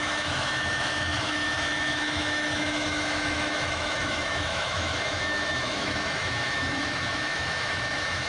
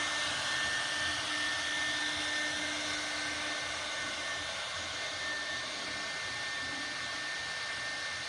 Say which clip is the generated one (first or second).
first